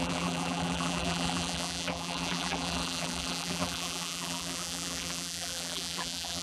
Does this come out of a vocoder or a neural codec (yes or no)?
yes